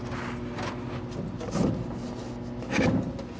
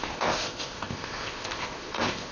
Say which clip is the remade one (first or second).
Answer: second